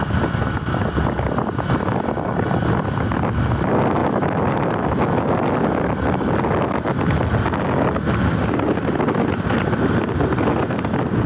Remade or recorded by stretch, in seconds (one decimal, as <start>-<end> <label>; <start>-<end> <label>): 0.0-11.3 recorded